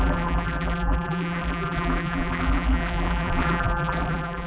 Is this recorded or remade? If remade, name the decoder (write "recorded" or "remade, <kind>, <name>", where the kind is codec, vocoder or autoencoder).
remade, vocoder, BigVGAN v2